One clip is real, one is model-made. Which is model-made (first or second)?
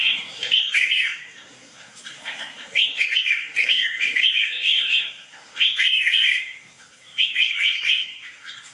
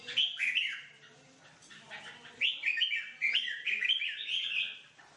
first